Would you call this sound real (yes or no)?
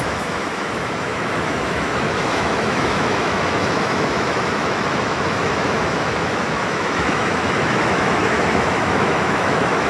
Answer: no